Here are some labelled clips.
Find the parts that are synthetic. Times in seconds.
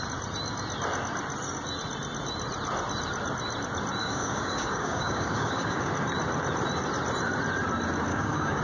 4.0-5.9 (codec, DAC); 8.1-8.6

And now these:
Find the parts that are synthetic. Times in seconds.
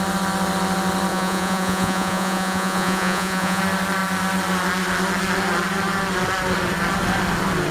1.1-3.6 (vocoder, Vocos)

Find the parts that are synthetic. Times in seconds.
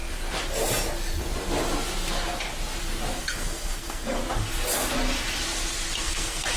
3.2-4.2 (codec, SNAC); 6.0-6.6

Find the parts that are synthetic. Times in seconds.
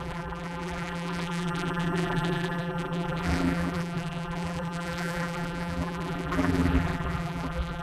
0.0-7.8 (vocoder, BigVGAN v2)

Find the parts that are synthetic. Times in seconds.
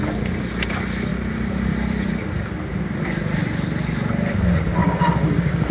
4.8-5.7 (codec, DAC)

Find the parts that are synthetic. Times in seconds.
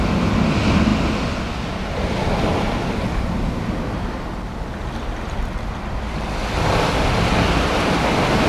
none